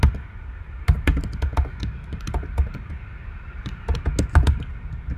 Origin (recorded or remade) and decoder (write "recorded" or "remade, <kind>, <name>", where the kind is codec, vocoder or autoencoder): recorded